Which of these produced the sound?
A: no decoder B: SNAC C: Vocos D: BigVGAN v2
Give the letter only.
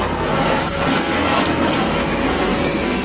B